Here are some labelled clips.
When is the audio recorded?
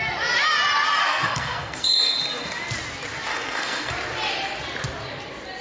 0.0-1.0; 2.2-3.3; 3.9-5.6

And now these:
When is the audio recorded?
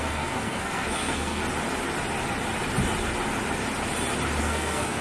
1.4-4.4